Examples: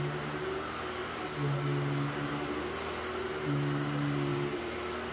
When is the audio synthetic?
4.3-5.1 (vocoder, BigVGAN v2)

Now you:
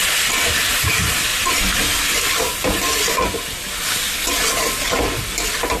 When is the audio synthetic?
none

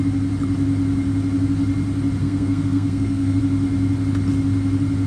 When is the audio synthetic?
2.2-3.4 (codec, SNAC)